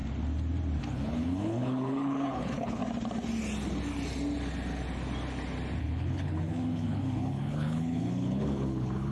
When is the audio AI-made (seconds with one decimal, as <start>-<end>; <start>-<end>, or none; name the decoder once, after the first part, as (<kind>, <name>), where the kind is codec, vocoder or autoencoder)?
0.8-2.8 (codec, HILCodec); 5.8-9.1

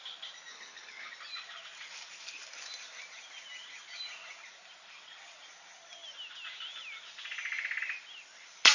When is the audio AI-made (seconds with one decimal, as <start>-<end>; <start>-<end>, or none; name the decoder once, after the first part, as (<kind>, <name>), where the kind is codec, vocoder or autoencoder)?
0.5-1.1 (codec, HILCodec)

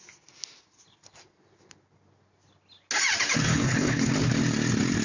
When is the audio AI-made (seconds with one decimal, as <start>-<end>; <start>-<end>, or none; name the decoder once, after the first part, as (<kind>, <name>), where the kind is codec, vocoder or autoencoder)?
3.5-4.1 (codec, HILCodec)